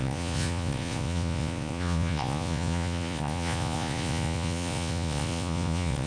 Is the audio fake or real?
fake